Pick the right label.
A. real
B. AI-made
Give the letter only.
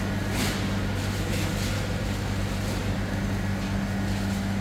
A